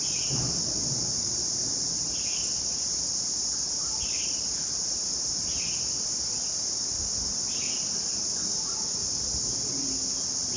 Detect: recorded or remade recorded